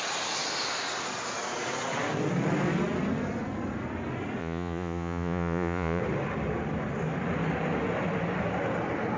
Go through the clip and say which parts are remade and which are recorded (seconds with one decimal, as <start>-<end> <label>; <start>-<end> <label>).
0.0-4.4 recorded; 4.4-6.0 remade; 6.0-9.2 recorded